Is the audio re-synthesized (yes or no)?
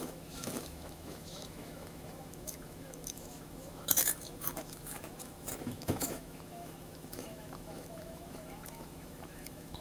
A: yes